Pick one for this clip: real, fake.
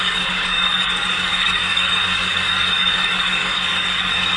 fake